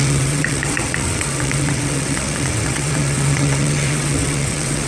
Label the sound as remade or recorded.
remade